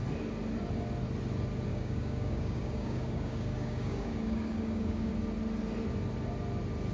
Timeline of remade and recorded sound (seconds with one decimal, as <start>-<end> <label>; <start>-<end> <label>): 0.0-1.7 recorded; 1.7-5.1 remade; 5.1-6.9 recorded

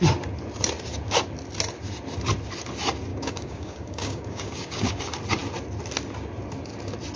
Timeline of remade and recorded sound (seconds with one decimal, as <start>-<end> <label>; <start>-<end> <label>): 0.0-3.1 recorded; 3.1-5.0 remade; 5.0-7.2 recorded

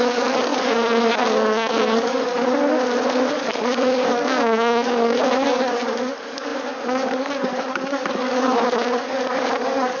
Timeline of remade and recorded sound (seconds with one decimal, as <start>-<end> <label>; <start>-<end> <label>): 0.0-2.6 remade; 2.6-3.3 recorded; 3.3-10.0 remade

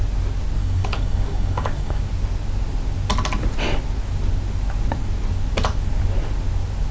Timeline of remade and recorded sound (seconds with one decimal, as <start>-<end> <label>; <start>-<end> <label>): 0.0-0.6 recorded; 0.6-2.0 remade; 2.0-6.9 recorded